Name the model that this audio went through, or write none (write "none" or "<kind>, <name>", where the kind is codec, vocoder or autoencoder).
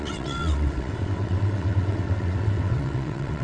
vocoder, WaveNeXt